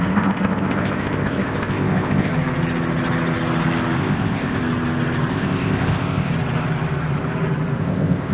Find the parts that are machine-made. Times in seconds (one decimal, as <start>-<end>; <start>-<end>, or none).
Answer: 0.0-2.3; 4.0-4.6; 5.3-6.3; 7.8-8.3